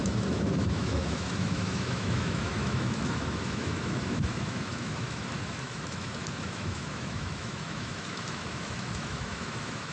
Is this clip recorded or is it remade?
remade